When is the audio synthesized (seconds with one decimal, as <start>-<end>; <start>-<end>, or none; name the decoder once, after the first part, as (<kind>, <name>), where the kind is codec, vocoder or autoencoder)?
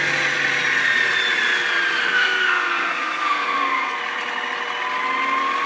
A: 2.0-4.0 (codec, SNAC)